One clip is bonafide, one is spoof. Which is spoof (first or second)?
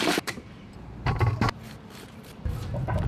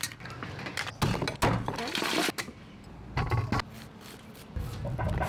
first